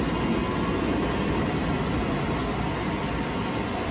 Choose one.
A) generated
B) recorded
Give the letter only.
B